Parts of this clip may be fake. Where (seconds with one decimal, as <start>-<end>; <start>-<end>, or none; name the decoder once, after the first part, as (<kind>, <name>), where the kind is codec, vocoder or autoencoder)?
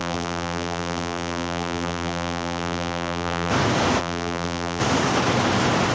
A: 0.0-3.5 (vocoder, BigVGAN v2); 4.0-4.8